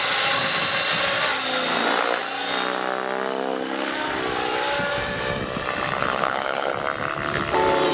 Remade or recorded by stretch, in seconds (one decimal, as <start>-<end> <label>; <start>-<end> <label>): 0.0-6.0 recorded; 6.0-6.7 remade; 6.7-7.9 recorded